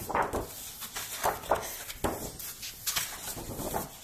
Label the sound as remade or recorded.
recorded